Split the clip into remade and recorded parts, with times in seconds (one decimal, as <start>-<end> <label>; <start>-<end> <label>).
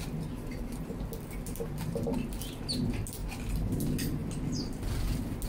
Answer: 0.0-5.5 recorded